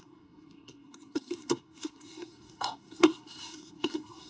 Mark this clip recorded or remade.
remade